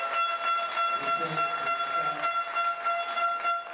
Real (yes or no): yes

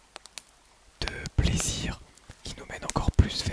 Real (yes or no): yes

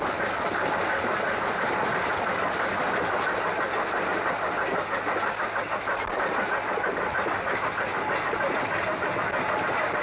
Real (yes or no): yes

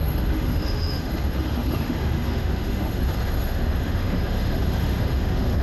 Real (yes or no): no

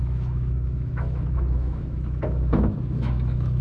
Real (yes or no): no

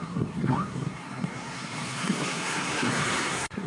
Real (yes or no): no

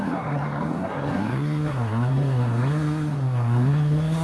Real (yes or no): no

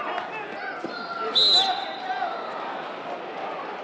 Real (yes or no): yes